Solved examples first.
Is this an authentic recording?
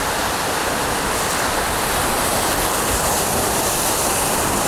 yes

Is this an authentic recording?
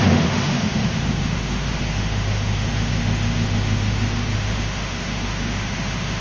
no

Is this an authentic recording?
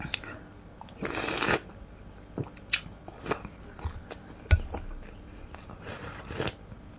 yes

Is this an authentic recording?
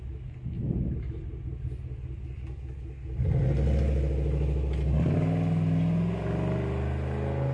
yes